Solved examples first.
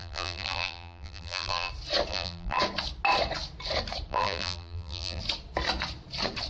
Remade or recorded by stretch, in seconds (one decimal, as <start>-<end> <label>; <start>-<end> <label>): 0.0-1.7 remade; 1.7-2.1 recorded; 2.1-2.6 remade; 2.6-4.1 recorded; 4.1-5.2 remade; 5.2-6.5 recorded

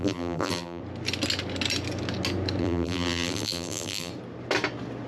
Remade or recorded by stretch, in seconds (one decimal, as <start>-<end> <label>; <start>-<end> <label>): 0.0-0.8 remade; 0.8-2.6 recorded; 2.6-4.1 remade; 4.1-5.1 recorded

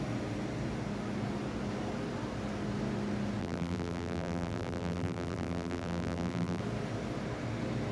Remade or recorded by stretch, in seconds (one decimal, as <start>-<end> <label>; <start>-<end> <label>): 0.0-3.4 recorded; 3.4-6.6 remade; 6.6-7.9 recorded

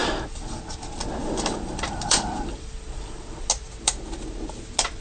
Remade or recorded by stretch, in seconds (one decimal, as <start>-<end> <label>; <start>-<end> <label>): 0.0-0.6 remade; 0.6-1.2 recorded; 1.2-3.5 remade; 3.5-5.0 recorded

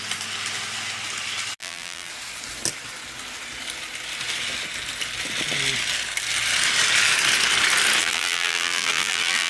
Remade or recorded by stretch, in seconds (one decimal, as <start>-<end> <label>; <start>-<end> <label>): 0.0-1.6 recorded; 1.6-2.1 remade; 2.1-8.0 recorded; 8.0-9.5 remade

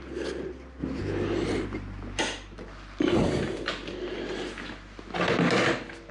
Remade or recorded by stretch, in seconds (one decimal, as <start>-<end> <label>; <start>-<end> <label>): 0.0-6.1 recorded

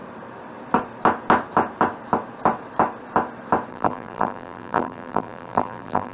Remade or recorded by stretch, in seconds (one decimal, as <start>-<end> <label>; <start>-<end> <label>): 0.0-3.7 recorded; 3.7-6.1 remade

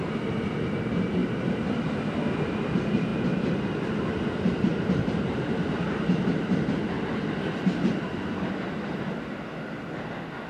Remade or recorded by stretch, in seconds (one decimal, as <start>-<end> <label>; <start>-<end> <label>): 0.0-4.7 recorded; 4.7-6.6 remade; 6.6-10.5 recorded